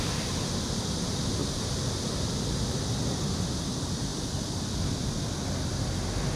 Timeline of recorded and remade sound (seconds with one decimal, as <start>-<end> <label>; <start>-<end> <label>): 0.0-1.4 recorded; 1.4-2.6 remade; 2.6-6.4 recorded